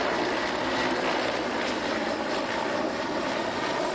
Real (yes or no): yes